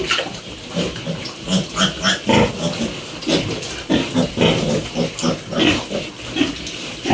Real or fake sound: real